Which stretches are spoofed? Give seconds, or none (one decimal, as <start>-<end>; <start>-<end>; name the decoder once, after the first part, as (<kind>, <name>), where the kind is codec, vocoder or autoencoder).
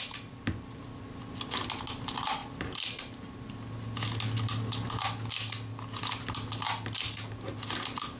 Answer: none